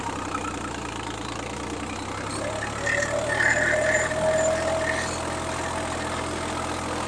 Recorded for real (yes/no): yes